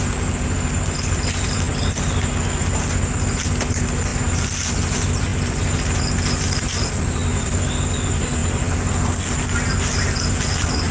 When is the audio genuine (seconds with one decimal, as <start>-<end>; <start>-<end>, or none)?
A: 0.0-10.9